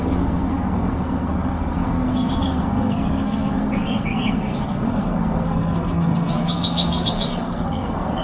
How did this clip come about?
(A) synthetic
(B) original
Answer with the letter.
A